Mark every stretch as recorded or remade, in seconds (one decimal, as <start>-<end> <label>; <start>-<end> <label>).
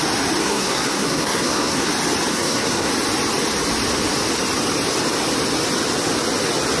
0.0-0.4 recorded; 0.4-1.9 remade; 1.9-2.3 recorded; 2.3-2.9 remade; 2.9-6.8 recorded